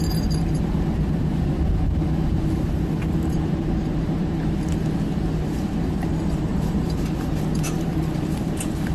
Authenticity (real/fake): fake